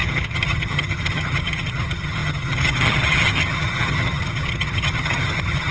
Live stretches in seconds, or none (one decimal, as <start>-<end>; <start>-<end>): none

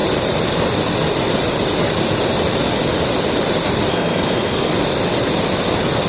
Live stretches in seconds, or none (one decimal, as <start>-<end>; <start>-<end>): 0.0-3.9; 4.7-6.1

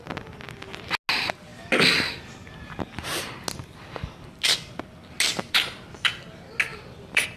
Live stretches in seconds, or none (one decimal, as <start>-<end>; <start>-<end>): 0.0-6.7

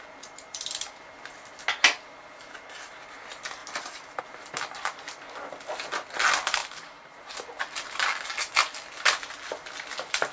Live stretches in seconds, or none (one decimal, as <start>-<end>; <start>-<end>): 0.0-3.6; 4.2-6.6; 7.3-10.3

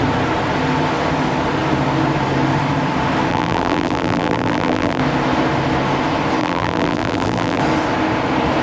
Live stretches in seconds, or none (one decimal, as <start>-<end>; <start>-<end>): 0.0-3.3; 5.0-6.4; 7.6-8.6

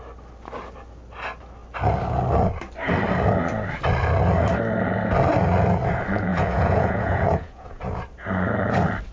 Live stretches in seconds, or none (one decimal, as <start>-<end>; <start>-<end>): 0.0-6.3; 8.0-9.1

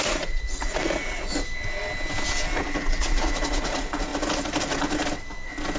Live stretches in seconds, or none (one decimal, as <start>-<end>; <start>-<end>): 1.3-2.6; 4.1-5.8

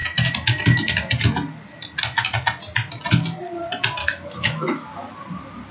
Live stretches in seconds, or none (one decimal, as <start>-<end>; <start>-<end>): 0.0-4.0; 4.9-5.7